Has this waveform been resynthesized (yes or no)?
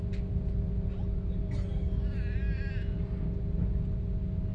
no